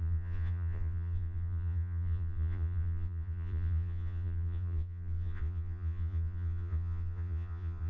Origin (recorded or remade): remade